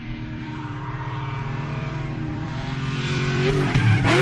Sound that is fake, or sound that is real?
fake